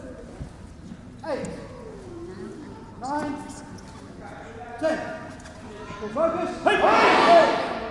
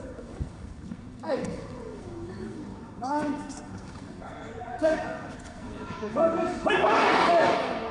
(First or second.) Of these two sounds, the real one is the first